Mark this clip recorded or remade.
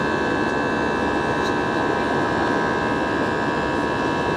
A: recorded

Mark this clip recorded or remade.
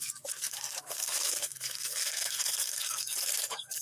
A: remade